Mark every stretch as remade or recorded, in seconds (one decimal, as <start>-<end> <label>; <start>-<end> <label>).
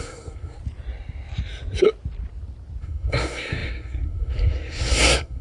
0.0-0.6 remade; 0.6-2.8 recorded; 2.8-5.4 remade